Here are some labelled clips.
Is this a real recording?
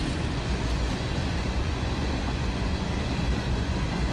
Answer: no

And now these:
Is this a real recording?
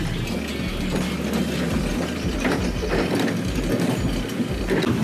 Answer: yes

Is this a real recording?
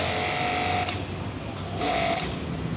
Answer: yes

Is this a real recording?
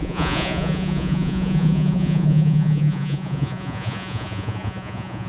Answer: no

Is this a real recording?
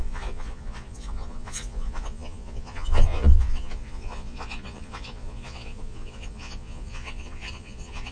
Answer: no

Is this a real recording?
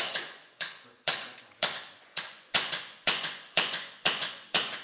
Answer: no